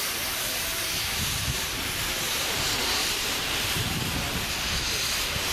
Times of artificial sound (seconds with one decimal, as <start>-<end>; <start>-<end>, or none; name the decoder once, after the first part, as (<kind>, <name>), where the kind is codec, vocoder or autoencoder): 0.7-2.6 (vocoder, BigVGAN v2); 3.0-4.5